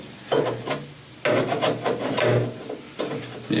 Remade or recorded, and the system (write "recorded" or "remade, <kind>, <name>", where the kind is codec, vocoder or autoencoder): recorded